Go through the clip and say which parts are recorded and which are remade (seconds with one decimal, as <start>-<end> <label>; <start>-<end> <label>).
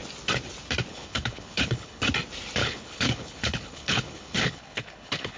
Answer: 0.0-0.9 recorded; 0.9-2.0 remade; 2.0-2.6 recorded; 2.6-5.4 remade